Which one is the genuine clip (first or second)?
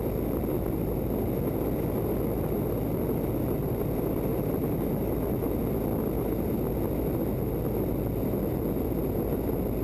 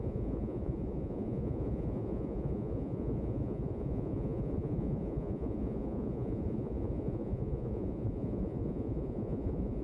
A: first